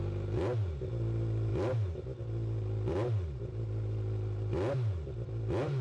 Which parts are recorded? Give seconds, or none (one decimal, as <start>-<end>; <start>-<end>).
0.0-5.8